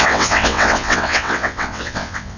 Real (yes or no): no